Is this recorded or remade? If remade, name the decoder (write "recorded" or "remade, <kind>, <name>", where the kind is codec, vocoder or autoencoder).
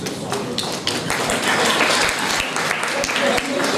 recorded